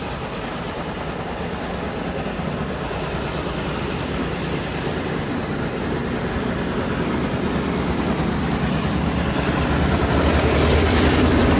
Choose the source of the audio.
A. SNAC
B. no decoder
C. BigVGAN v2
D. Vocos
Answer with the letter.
B